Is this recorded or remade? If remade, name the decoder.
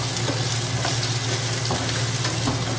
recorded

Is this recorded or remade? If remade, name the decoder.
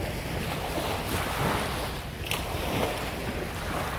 recorded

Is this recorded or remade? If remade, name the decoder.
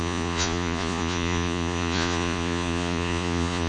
remade, vocoder, Vocos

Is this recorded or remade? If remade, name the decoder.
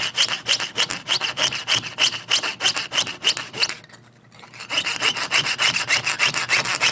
recorded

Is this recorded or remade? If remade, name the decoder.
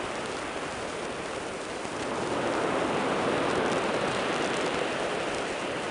recorded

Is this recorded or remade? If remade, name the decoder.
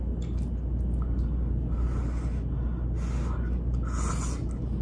recorded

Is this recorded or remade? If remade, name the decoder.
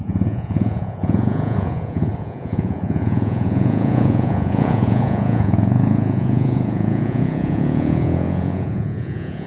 remade, vocoder, Vocos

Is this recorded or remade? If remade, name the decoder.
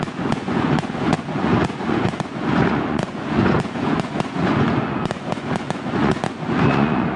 remade, vocoder, Vocos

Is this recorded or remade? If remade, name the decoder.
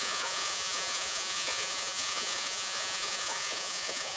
remade, vocoder, Vocos